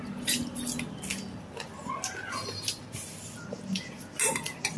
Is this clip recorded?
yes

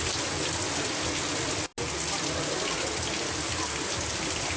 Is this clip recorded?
yes